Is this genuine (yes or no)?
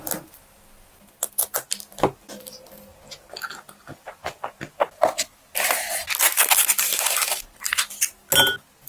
yes